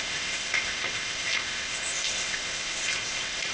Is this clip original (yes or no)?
no